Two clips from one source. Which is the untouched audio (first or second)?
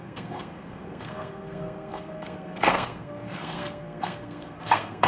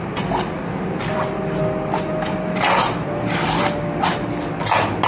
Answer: second